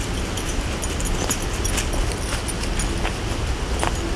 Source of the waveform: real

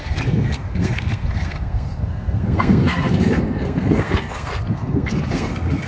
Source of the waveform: fake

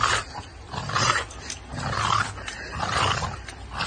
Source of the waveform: real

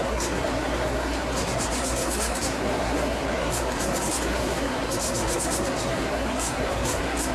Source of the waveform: fake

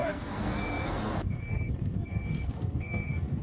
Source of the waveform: fake